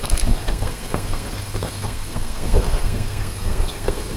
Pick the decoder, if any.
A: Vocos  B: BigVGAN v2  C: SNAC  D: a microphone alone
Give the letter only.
C